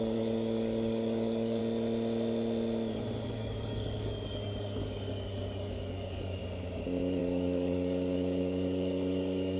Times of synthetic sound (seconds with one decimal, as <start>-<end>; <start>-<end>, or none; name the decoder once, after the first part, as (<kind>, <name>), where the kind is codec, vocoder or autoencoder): 0.0-1.6 (codec, DAC); 3.3-6.4; 7.2-9.6